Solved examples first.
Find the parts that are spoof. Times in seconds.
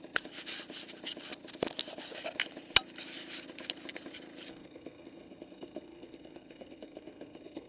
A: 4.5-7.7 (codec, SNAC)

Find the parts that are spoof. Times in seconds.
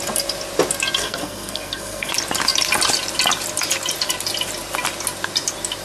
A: 1.0-2.1 (codec, SNAC)